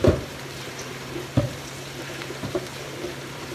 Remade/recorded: remade